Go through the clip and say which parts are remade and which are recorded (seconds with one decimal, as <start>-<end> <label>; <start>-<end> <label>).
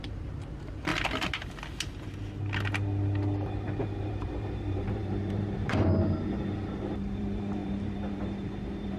0.0-0.9 remade; 0.9-3.8 recorded; 3.8-9.0 remade